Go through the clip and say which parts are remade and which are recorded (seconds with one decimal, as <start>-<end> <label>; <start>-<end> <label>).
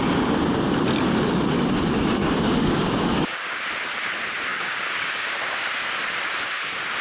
0.0-2.2 recorded; 2.2-3.6 remade; 3.6-4.5 recorded; 4.5-5.3 remade; 5.3-7.0 recorded